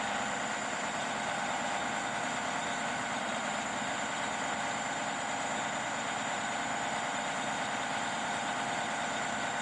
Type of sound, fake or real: real